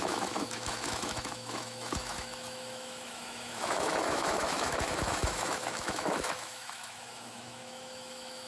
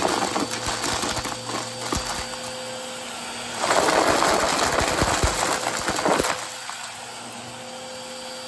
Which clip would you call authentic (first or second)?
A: second